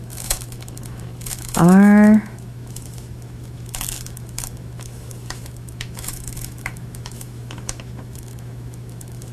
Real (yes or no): no